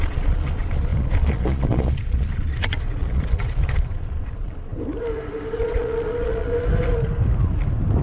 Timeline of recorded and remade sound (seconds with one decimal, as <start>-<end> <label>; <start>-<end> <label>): 0.0-4.7 remade; 4.7-5.5 recorded; 5.5-6.5 remade; 6.5-8.0 recorded